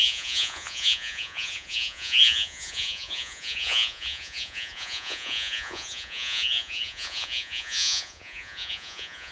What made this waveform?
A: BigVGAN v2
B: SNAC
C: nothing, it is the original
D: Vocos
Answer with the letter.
D